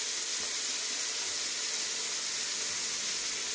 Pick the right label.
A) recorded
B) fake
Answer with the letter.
A